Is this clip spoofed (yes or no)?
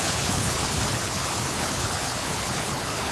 yes